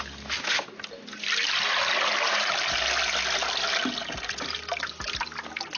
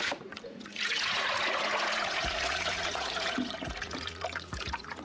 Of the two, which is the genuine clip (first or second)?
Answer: first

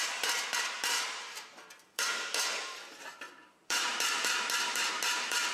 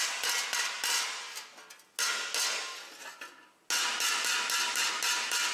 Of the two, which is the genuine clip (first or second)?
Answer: second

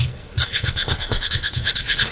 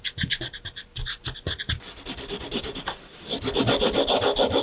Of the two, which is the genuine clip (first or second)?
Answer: second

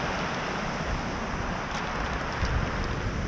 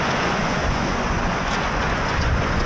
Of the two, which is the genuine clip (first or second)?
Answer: first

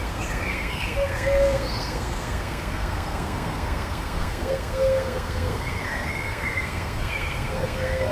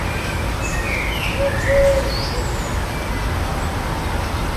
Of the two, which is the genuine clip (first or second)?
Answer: second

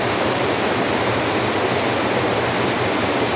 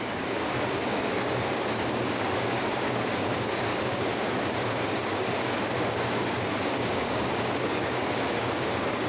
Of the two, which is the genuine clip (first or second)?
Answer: first